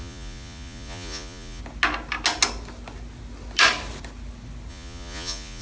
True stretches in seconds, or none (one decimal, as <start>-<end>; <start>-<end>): 1.6-4.7